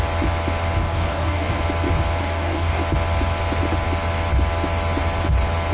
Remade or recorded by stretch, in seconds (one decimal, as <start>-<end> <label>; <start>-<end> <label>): 0.0-0.8 recorded; 0.8-1.6 remade; 1.6-2.2 recorded; 2.2-2.8 remade; 2.8-5.7 recorded